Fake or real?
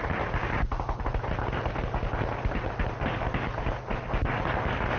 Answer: real